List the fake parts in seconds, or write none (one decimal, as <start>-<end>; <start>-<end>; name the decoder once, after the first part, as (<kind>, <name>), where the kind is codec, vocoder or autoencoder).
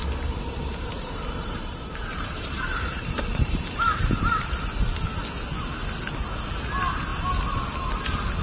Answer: 0.0-4.5 (vocoder, BigVGAN v2)